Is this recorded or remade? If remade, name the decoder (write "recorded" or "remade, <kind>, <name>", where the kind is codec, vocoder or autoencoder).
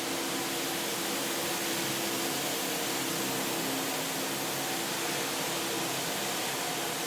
recorded